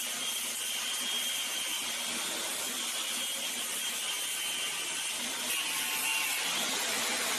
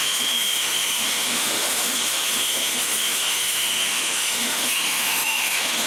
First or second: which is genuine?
first